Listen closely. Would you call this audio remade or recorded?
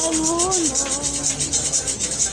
recorded